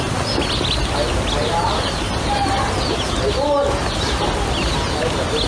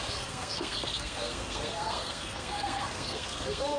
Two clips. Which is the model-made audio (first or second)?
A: second